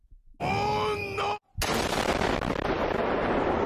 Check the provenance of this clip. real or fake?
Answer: real